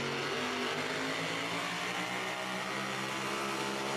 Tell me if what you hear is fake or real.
real